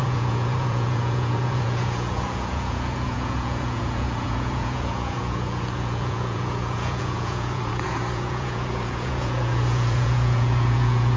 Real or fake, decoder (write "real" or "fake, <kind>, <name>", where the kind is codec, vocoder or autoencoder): fake, vocoder, Vocos